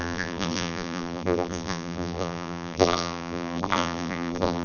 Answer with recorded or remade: remade